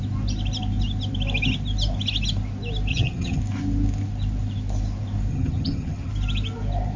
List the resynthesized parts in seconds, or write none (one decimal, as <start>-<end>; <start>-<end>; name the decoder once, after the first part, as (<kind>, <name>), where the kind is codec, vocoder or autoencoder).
2.9-3.4 (vocoder, HiFi-GAN); 5.3-6.1